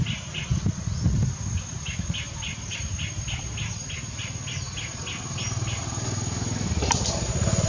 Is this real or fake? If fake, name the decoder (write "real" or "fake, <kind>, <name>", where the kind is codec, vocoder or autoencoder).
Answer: real